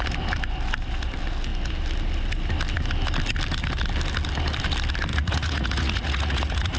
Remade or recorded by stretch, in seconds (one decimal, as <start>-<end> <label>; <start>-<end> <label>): 0.0-5.1 recorded; 5.1-6.8 remade